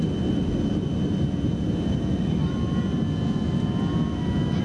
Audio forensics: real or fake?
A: real